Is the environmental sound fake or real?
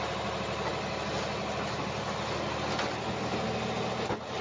real